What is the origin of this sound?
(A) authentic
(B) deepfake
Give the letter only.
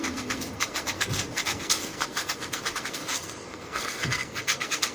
B